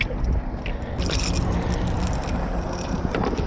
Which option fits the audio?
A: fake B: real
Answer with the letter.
B